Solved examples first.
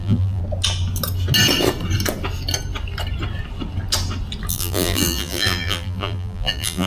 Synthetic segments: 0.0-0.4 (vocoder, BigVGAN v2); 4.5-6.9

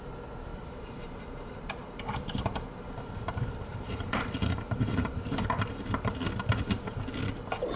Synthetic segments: 0.5-3.1 (vocoder, BigVGAN v2); 3.7-6.1

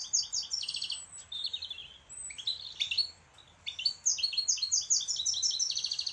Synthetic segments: none

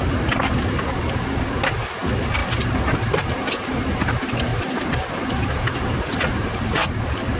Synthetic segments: 0.0-6.8 (vocoder, BigVGAN v2)

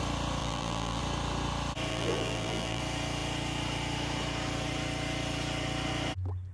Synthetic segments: 0.4-1.0 (vocoder, BigVGAN v2); 1.9-2.8